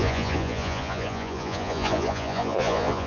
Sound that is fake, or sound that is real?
fake